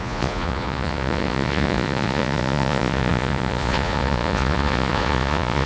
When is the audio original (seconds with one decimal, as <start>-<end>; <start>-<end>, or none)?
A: none